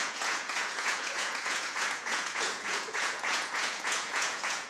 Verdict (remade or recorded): remade